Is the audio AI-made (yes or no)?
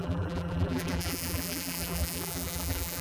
yes